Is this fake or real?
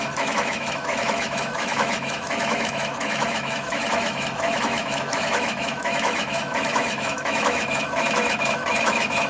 fake